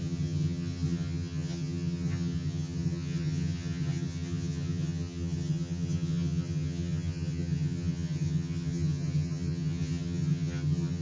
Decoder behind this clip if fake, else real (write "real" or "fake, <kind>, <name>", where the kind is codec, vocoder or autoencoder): fake, vocoder, HiFi-GAN